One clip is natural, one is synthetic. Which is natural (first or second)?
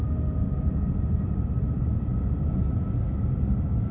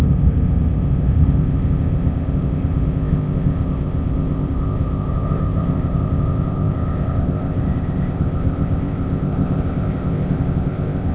first